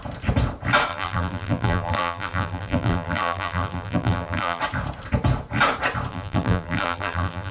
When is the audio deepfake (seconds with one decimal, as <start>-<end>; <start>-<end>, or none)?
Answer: 0.9-4.6; 6.1-7.5